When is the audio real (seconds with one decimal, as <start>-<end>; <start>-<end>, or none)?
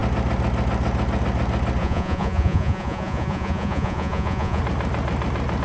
0.0-1.8; 4.6-5.6